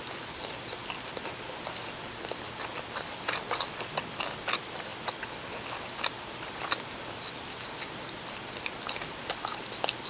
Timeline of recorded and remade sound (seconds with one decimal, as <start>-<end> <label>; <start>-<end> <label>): 0.0-10.1 recorded